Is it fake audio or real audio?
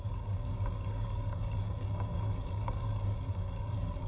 fake